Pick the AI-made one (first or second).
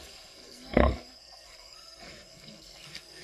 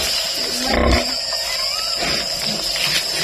first